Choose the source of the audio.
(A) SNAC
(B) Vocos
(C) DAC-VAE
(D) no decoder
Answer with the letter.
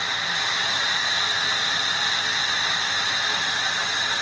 D